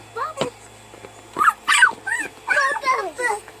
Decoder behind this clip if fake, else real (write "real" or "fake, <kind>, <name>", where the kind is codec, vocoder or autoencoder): fake, vocoder, BigVGAN v2